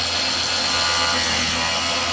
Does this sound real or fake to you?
real